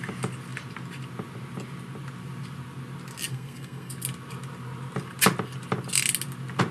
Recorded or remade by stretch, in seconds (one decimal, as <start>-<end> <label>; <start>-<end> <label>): 0.0-3.3 recorded; 3.3-3.9 remade; 3.9-6.7 recorded